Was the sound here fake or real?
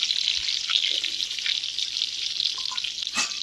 real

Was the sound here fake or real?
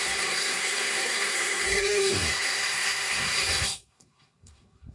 fake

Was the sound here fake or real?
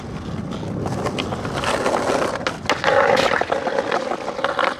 real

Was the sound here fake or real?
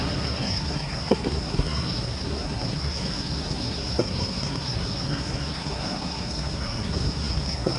fake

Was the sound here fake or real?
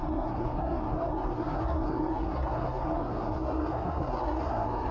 fake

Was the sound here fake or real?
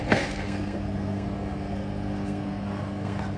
fake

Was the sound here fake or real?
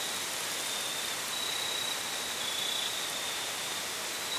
real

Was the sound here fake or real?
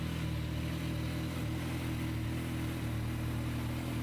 real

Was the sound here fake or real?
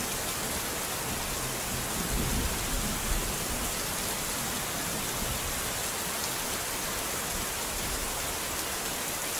real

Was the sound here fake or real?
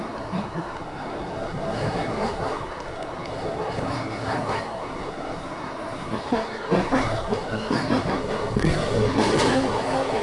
fake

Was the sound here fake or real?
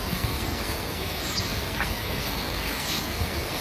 fake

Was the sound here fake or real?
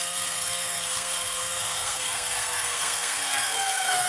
fake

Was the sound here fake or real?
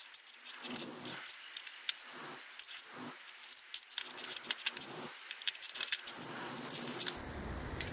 real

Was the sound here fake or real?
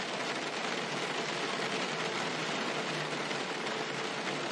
real